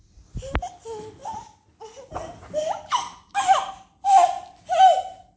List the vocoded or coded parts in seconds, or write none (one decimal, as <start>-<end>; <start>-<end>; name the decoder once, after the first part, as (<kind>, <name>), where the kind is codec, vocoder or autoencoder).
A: 1.2-3.7 (vocoder, BigVGAN v2)